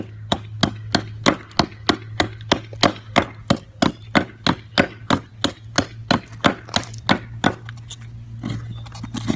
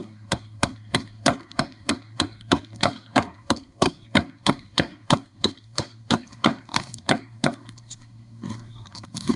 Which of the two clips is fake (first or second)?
second